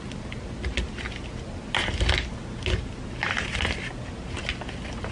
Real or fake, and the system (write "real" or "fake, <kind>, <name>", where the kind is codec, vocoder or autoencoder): real